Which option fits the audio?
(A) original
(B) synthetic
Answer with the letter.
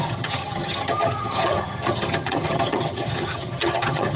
B